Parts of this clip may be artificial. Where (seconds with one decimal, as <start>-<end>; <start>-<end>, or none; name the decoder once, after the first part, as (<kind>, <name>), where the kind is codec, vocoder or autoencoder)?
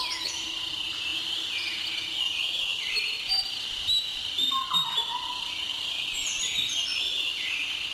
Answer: 1.1-4.2 (vocoder, BigVGAN v2); 5.7-6.4